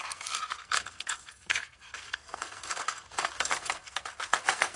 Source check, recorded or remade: remade